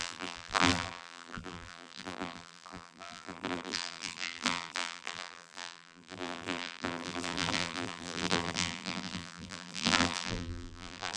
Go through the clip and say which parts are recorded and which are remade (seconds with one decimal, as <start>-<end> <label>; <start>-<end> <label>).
0.0-11.2 remade